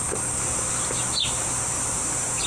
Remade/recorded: recorded